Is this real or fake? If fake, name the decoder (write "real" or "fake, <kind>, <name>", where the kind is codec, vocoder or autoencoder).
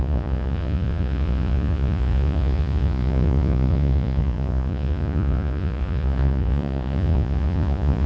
fake, vocoder, Vocos